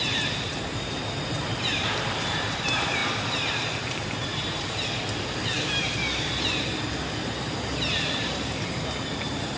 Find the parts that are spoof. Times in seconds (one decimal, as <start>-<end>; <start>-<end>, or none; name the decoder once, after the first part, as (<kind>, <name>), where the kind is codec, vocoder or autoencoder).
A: 0.0-3.0 (vocoder, BigVGAN v2); 3.9-4.3; 9.1-9.6